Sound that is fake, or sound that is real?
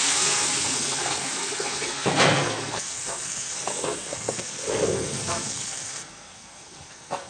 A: fake